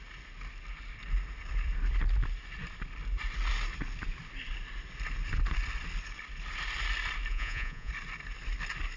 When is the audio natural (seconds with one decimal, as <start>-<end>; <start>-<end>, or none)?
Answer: 0.0-7.3; 7.9-9.0